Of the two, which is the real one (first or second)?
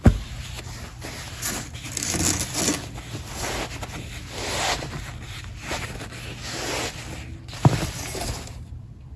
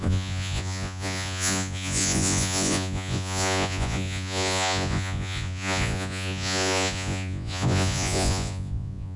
first